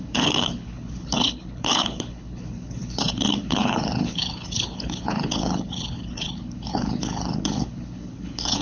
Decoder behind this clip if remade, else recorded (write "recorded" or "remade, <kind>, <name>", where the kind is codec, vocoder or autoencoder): remade, codec, HILCodec